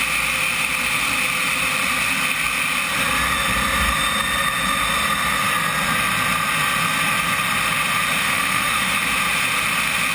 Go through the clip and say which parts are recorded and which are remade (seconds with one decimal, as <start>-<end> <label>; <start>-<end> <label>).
0.0-8.2 recorded; 8.2-8.9 remade; 8.9-10.1 recorded